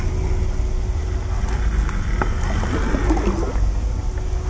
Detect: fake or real real